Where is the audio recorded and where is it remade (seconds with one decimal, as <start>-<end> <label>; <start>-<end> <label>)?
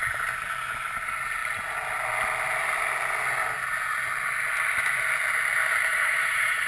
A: 0.0-5.9 recorded; 5.9-6.7 remade